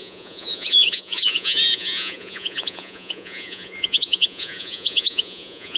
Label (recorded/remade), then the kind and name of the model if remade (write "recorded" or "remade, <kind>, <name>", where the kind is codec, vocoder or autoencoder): remade, vocoder, Vocos